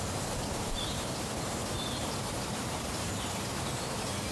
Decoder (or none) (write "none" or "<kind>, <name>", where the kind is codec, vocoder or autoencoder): vocoder, BigVGAN v2